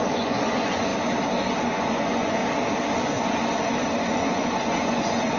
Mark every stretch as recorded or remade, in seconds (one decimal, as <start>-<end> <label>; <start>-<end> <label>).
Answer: 0.0-0.9 remade; 0.9-1.6 recorded; 1.6-2.4 remade; 2.4-4.0 recorded; 4.0-5.4 remade